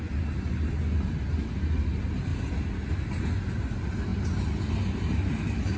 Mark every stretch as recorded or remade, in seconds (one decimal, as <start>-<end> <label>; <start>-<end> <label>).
0.0-5.8 recorded